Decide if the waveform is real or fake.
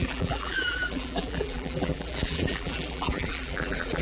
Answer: fake